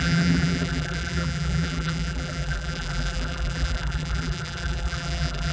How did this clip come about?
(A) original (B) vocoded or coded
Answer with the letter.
B